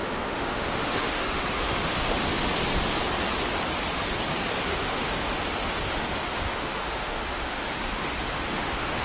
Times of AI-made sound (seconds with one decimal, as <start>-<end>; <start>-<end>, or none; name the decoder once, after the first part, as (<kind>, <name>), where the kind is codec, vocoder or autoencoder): 0.0-2.5 (autoencoder, DAC-VAE); 4.7-5.4; 6.3-9.0